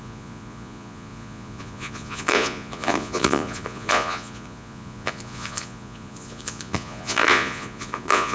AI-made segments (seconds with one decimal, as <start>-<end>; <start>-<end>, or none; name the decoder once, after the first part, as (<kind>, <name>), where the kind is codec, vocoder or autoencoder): 0.0-8.3 (vocoder, Vocos)